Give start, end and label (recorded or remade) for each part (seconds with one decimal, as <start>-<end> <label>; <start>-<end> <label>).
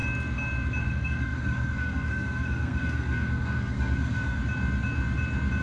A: 0.0-0.8 recorded; 0.8-4.4 remade; 4.4-5.6 recorded